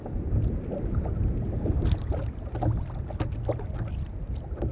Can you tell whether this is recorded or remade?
recorded